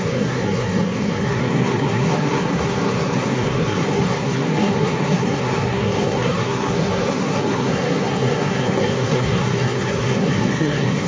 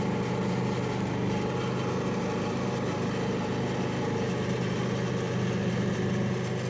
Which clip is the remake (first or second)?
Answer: first